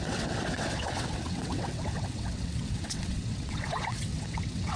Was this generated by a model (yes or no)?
yes